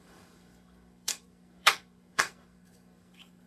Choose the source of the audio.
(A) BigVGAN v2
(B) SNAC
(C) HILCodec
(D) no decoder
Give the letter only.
B